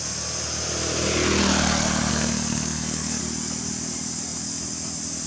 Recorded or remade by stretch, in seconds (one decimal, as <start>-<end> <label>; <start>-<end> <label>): 0.0-2.1 recorded; 2.1-3.2 remade; 3.2-5.3 recorded